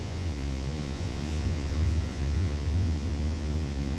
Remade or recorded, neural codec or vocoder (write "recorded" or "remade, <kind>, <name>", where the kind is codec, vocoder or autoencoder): remade, vocoder, Vocos